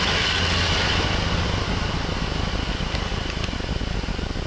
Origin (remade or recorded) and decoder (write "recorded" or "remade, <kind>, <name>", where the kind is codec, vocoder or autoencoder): recorded